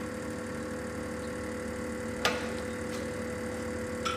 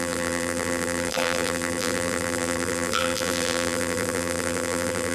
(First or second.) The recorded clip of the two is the first